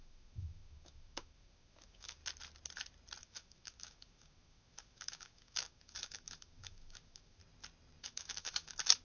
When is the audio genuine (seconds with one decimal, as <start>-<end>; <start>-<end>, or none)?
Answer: 2.2-3.2; 7.4-8.0

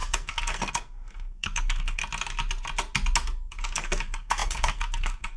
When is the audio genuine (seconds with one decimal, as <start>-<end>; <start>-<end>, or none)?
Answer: 2.0-3.5

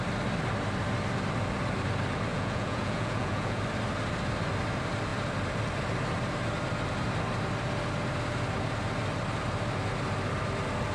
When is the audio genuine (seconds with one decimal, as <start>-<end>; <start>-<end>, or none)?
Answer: 0.0-2.3; 3.6-10.9

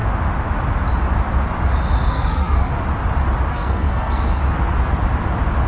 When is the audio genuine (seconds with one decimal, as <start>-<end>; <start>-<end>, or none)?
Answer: 0.0-2.1; 2.7-3.5; 4.4-5.7

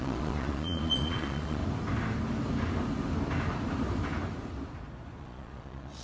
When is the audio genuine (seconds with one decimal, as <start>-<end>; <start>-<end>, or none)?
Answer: 1.6-5.2